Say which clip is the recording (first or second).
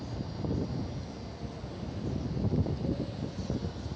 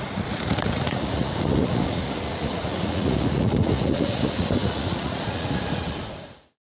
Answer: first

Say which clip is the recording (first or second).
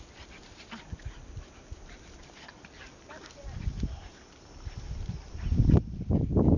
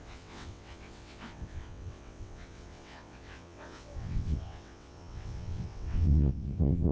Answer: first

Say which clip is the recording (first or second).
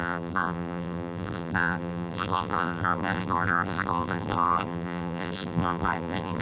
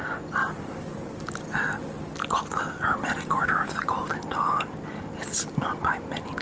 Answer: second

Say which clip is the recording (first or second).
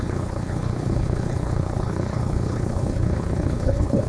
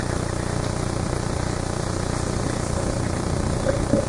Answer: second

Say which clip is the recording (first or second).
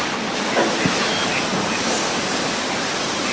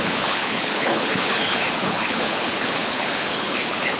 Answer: first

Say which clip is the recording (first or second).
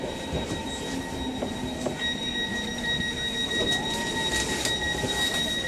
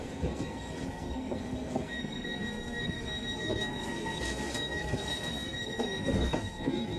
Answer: first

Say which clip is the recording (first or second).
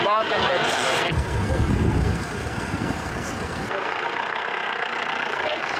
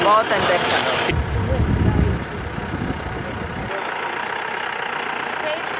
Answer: second